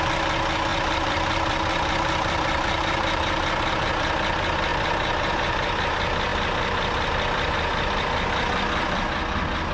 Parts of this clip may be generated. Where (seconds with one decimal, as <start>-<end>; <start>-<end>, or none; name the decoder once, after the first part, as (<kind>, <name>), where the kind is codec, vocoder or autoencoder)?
0.7-3.9 (vocoder, BigVGAN v2); 4.7-5.8